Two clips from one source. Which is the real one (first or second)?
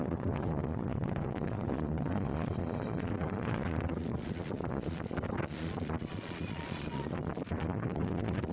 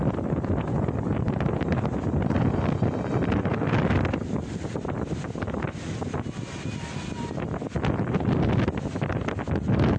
second